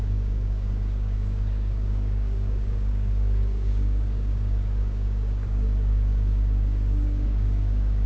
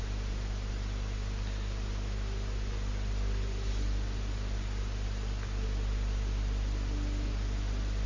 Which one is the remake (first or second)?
first